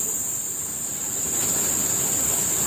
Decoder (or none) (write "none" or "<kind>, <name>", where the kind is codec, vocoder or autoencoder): none